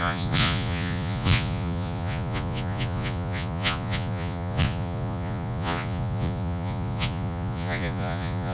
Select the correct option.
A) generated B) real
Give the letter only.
A